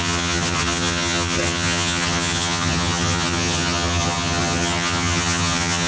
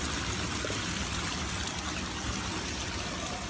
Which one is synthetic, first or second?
first